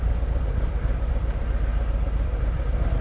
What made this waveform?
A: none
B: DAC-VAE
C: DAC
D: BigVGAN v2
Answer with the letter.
D